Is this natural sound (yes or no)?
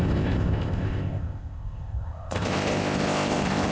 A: no